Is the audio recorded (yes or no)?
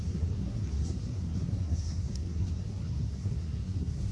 no